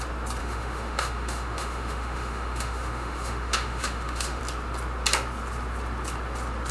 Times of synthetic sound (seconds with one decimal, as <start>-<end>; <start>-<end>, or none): 0.4-4.4